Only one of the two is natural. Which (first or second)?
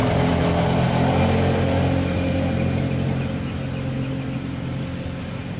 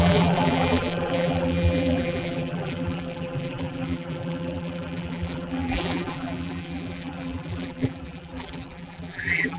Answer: first